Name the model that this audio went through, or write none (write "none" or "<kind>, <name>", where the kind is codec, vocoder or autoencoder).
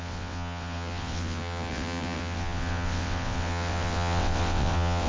vocoder, WaveNeXt